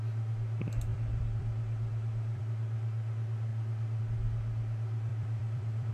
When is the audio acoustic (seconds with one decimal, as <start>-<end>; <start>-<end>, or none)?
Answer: 0.0-0.9; 2.4-5.1